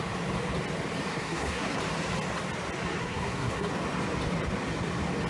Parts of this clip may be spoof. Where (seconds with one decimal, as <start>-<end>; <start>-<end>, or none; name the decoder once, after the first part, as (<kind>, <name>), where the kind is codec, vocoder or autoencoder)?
1.1-1.8 (codec, SNAC); 3.0-3.7